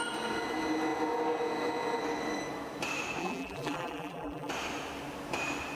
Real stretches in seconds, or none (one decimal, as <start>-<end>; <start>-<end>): 0.0-3.2; 4.5-5.7